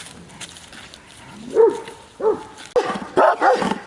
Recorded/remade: recorded